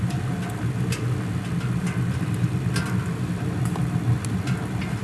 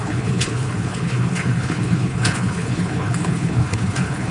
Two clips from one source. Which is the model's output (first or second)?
second